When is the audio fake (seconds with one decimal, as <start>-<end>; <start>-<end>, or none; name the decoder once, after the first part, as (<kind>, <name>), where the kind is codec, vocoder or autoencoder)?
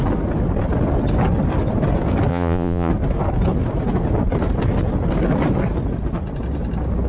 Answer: 2.3-2.9 (vocoder, Vocos)